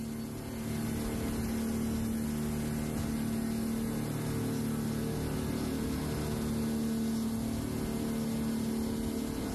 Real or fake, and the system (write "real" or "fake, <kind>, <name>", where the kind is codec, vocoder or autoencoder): real